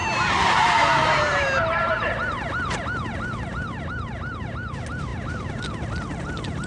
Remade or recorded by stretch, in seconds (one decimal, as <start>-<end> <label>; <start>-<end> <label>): 0.0-2.1 remade; 2.1-5.1 recorded; 5.1-5.6 remade; 5.6-6.7 recorded